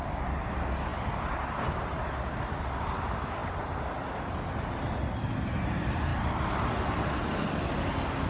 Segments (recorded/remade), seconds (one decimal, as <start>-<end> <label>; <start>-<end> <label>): 0.0-8.3 recorded